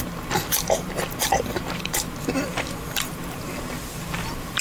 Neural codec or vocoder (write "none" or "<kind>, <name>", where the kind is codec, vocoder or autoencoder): vocoder, BigVGAN v2